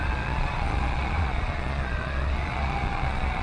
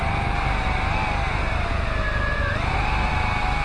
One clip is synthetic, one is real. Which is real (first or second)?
second